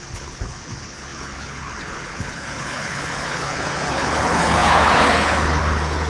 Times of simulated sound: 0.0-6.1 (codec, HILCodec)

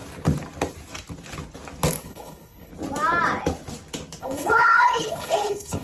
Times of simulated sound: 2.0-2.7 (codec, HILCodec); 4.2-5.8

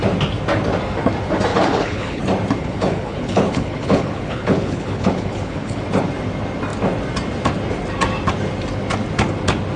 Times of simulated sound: 1.5-2.2 (codec, HILCodec); 2.6-5.8

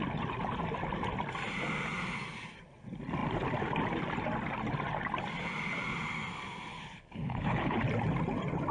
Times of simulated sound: 6.7-7.8 (codec, HILCodec)

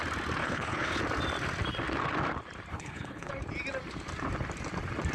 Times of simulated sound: 0.4-1.0 (codec, HILCodec); 2.7-3.3